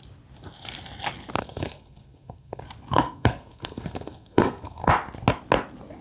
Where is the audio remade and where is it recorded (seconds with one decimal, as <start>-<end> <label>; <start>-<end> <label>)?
0.0-1.4 recorded; 1.4-2.6 remade; 2.6-3.0 recorded; 3.0-4.9 remade; 4.9-6.0 recorded